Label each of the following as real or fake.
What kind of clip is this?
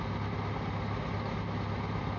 real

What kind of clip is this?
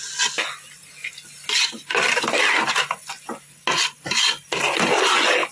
real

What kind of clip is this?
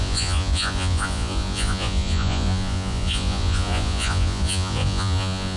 fake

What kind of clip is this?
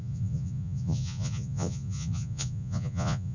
fake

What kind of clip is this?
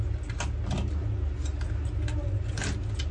real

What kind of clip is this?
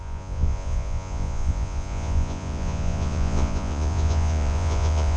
fake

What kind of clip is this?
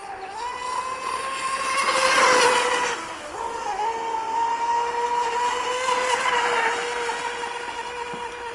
real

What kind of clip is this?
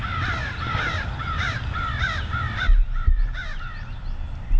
real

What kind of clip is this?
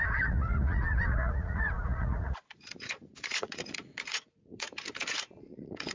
fake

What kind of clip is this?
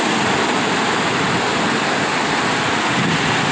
real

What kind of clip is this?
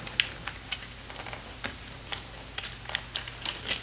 real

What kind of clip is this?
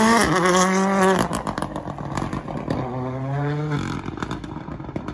real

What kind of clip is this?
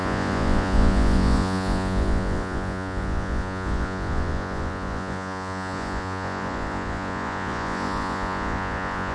fake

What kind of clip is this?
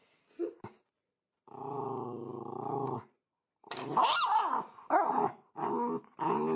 real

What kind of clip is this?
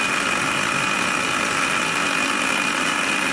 real